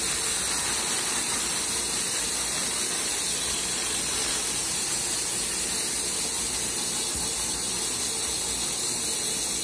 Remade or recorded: recorded